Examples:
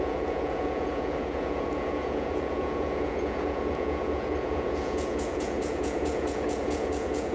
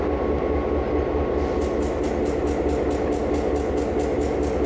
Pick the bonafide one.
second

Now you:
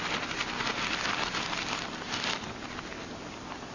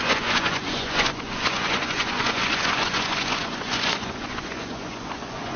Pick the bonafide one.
first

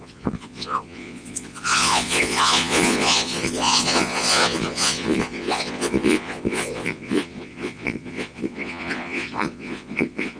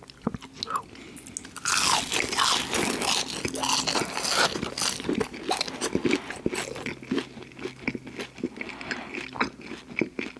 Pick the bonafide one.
second